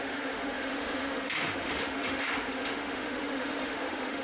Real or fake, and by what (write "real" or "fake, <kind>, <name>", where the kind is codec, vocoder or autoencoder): fake, autoencoder, DAC-VAE